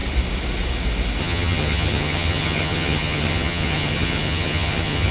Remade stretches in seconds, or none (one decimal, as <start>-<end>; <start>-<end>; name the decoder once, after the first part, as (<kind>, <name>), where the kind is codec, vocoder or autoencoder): 1.2-5.1 (vocoder, HiFi-GAN)